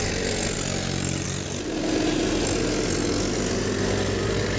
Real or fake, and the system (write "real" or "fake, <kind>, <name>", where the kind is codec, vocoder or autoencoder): real